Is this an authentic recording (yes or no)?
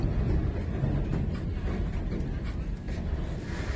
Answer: yes